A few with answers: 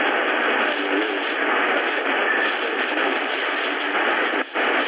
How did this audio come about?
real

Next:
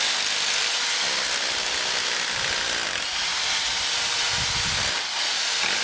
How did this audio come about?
real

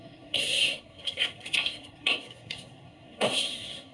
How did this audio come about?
fake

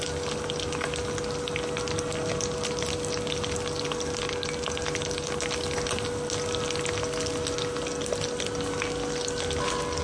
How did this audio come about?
real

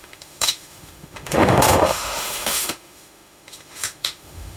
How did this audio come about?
fake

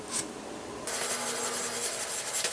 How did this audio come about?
real